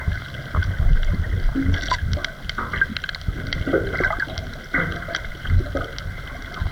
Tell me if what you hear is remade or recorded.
recorded